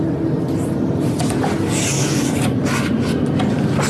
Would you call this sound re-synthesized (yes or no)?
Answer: no